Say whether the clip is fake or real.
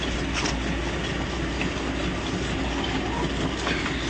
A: real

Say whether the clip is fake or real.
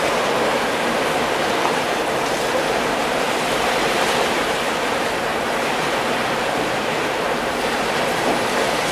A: fake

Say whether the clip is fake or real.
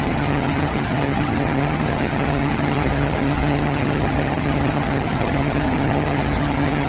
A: fake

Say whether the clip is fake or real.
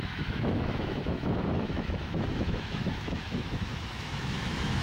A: fake